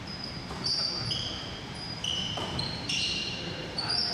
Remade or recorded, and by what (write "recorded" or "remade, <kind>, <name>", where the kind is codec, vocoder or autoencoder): remade, vocoder, BigVGAN v2